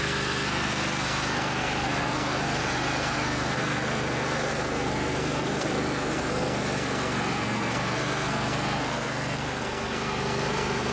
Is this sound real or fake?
fake